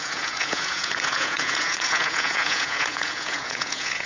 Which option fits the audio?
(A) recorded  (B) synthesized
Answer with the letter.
B